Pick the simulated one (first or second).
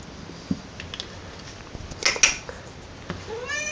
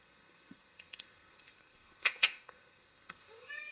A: second